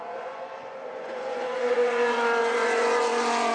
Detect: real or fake fake